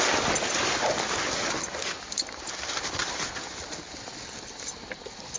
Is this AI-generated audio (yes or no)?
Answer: no